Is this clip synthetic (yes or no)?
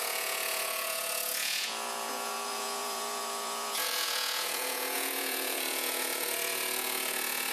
yes